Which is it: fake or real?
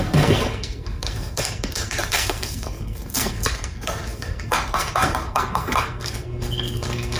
fake